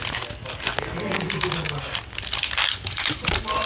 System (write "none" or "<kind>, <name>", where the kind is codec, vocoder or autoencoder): none